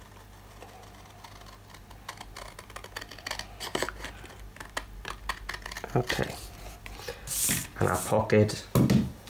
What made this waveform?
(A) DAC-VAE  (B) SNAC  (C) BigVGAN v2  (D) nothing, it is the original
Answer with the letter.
D